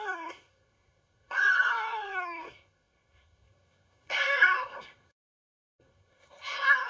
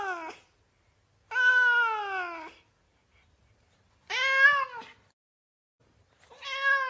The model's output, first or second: first